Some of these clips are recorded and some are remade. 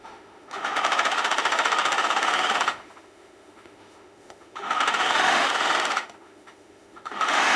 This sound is remade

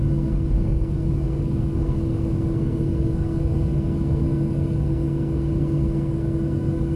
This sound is remade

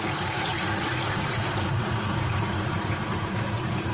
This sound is remade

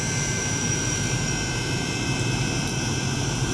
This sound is remade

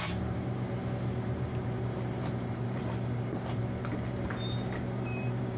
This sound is remade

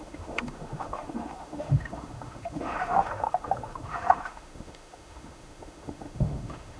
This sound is remade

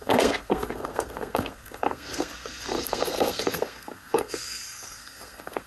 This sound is remade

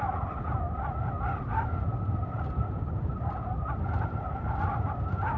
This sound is recorded